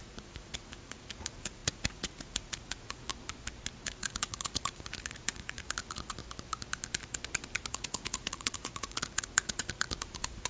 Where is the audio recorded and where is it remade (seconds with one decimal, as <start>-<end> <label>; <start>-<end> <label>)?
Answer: 0.0-3.1 remade; 3.1-3.8 recorded; 3.8-6.2 remade; 6.2-7.7 recorded; 7.7-10.5 remade